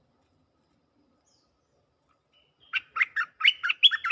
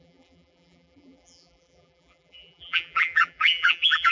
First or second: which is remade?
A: second